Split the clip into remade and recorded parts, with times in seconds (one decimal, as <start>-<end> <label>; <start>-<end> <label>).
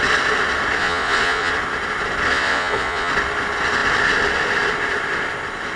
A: 0.0-0.8 recorded; 0.8-1.5 remade; 1.5-2.3 recorded; 2.3-3.1 remade; 3.1-5.8 recorded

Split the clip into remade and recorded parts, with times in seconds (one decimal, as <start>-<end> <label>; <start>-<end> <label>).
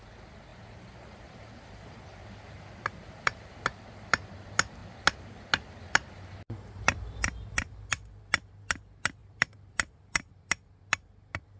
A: 0.0-0.5 recorded; 0.5-3.6 remade; 3.6-9.2 recorded; 9.2-10.3 remade; 10.3-11.6 recorded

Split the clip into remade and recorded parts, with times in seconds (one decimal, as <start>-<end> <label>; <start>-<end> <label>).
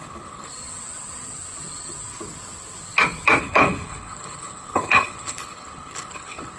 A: 0.0-0.5 remade; 0.5-3.4 recorded; 3.4-6.6 remade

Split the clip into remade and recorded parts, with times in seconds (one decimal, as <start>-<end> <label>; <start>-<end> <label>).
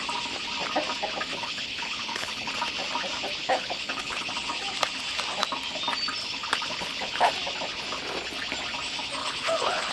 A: 0.0-1.3 recorded; 1.3-2.5 remade; 2.5-3.4 recorded; 3.4-4.3 remade; 4.3-6.2 recorded; 6.2-7.3 remade; 7.3-9.2 recorded; 9.2-9.9 remade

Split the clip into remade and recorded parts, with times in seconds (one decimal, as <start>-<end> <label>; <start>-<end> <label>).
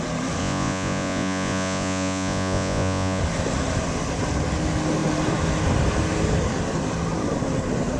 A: 0.0-0.4 recorded; 0.4-3.2 remade; 3.2-8.0 recorded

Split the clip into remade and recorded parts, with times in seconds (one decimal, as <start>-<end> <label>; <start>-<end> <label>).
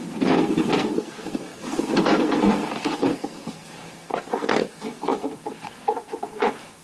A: 0.0-6.8 remade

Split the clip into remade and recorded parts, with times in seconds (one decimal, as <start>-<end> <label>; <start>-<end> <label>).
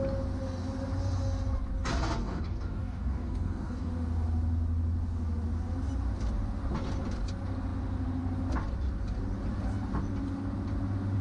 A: 0.0-2.2 recorded; 2.2-3.9 remade; 3.9-11.2 recorded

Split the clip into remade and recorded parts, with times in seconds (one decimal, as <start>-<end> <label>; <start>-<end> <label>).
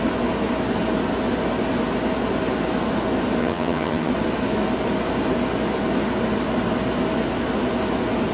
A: 0.0-3.4 recorded; 3.4-4.1 remade; 4.1-8.3 recorded